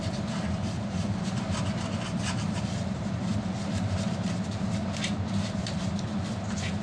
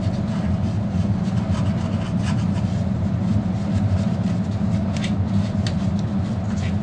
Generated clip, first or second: first